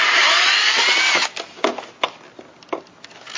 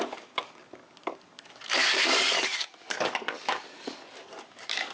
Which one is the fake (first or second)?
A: second